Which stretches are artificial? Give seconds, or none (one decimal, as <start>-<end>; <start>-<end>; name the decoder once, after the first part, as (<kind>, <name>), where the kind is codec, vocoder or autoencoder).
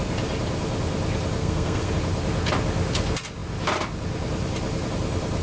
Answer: 1.4-1.9 (codec, SNAC)